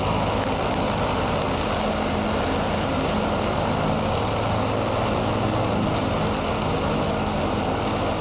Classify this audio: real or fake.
real